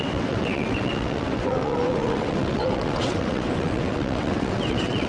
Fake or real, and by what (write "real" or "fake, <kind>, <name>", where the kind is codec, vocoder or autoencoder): fake, vocoder, WaveNeXt